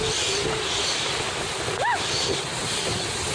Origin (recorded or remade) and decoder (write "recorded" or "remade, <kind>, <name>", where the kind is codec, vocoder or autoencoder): recorded